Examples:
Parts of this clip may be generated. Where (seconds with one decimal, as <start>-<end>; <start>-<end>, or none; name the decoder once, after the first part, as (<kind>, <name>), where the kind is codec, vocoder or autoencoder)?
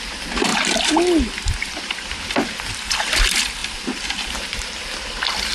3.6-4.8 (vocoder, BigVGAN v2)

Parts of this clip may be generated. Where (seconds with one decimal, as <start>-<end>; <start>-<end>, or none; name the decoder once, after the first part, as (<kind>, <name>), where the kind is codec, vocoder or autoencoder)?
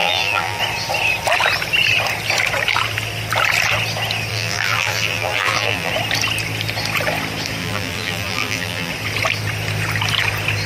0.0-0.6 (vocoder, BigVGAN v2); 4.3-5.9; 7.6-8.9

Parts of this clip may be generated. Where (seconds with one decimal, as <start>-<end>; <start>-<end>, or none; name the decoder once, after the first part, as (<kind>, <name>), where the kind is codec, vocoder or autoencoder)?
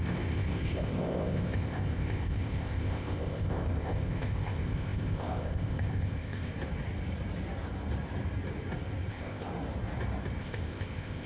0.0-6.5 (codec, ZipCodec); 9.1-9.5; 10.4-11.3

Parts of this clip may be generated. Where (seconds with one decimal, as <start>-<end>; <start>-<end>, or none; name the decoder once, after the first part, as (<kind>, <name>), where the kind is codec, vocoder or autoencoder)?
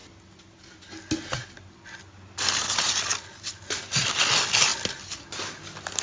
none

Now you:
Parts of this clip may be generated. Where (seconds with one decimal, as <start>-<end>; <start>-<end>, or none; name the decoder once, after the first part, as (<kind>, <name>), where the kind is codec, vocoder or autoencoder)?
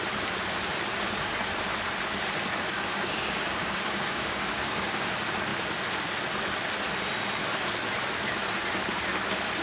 2.9-5.1 (codec, DAC)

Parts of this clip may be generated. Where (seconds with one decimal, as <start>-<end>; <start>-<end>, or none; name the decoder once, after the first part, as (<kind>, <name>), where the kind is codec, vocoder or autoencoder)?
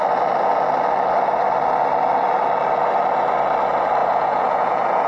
4.0-5.1 (vocoder, Vocos)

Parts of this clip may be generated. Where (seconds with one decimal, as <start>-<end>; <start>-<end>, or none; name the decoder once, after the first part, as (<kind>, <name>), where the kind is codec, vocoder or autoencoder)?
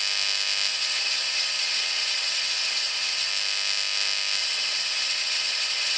0.7-3.3 (vocoder, HiFi-GAN); 4.4-6.0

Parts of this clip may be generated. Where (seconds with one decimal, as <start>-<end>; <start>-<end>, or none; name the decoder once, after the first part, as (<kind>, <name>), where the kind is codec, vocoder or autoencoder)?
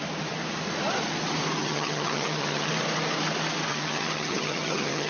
1.6-2.7 (vocoder, HiFi-GAN); 3.7-5.1